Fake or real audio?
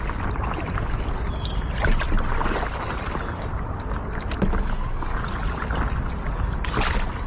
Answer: real